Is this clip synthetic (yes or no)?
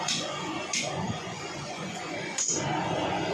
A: yes